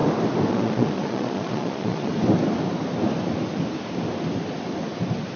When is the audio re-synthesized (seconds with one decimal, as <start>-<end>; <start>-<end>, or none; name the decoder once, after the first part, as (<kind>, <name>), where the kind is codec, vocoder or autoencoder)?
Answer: 0.5-2.1 (vocoder, Vocos)